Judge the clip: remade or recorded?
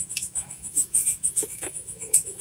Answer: remade